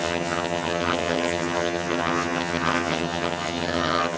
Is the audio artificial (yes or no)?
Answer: yes